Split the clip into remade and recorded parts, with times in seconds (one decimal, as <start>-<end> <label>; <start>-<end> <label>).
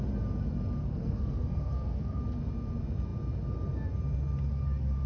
0.0-0.8 recorded; 0.8-2.2 remade; 2.2-5.1 recorded